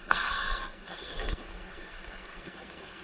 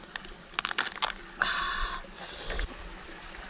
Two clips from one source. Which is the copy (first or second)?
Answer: first